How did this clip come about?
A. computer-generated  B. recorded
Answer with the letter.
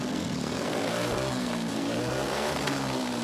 A